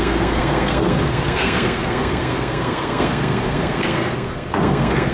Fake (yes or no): yes